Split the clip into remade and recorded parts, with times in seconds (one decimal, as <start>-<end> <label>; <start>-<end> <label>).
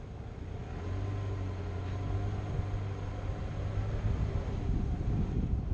0.0-5.7 recorded